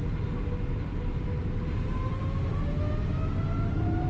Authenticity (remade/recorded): recorded